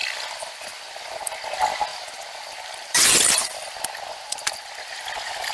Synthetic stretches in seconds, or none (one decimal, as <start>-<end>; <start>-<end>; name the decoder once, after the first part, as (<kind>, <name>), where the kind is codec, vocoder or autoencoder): 0.0-1.4 (vocoder, BigVGAN v2); 1.9-5.5